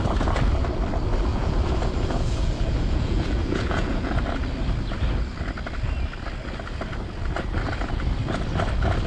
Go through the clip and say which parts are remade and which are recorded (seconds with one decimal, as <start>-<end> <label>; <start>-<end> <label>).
0.0-1.3 recorded; 1.3-4.2 remade; 4.2-9.1 recorded